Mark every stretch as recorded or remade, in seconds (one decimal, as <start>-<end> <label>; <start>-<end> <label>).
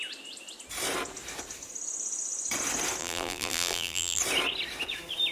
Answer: 0.0-3.0 recorded; 3.0-4.2 remade; 4.2-5.3 recorded